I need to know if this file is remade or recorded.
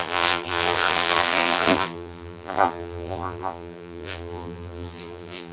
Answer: remade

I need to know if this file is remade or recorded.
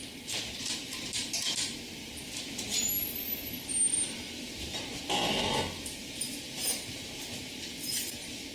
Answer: recorded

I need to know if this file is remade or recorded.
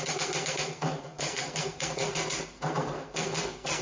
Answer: remade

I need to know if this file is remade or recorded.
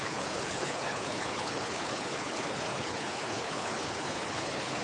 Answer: remade